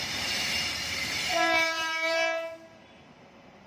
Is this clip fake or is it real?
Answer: fake